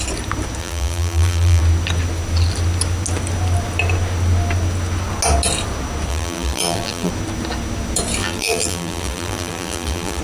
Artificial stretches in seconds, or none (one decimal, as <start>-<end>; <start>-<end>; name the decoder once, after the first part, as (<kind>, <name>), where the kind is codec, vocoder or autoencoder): 0.6-1.6 (vocoder, BigVGAN v2); 6.1-7.1; 8.2-10.2